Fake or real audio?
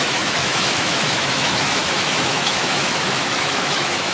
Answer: fake